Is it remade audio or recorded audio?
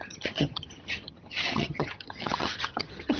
remade